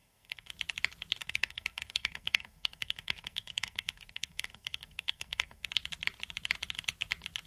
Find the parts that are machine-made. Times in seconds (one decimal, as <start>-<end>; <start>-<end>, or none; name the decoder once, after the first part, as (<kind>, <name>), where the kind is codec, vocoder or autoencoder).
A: 0.0-0.5 (codec, SNAC); 1.2-5.7